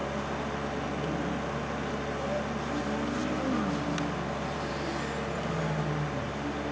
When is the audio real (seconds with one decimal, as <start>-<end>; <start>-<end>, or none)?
0.0-6.7